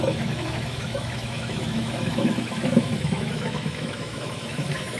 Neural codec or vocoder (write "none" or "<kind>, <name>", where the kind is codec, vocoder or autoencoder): autoencoder, DAC-VAE